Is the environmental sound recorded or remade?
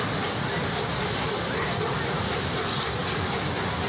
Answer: recorded